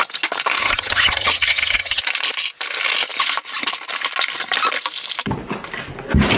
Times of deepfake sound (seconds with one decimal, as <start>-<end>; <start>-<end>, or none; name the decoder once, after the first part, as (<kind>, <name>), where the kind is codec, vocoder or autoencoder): 0.6-2.0 (vocoder, HiFi-GAN)